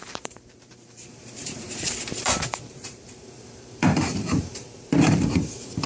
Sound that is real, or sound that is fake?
fake